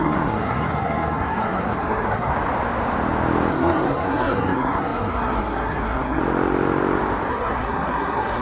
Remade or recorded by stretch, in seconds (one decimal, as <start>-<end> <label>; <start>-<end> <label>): 0.0-2.3 remade; 2.3-3.5 recorded; 3.5-6.2 remade; 6.2-7.3 recorded; 7.3-8.4 remade